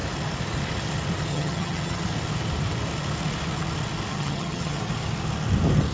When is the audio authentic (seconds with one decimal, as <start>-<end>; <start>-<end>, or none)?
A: 0.0-1.3; 2.0-4.1; 4.8-5.9